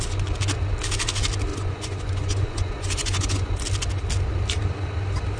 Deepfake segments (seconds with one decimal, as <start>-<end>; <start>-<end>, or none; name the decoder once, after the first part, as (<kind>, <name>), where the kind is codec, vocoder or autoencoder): 1.5-3.5 (vocoder, Vocos)